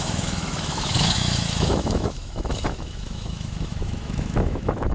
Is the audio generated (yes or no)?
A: yes